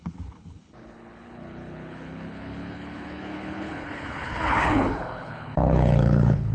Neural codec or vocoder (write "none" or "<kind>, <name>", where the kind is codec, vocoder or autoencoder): codec, HILCodec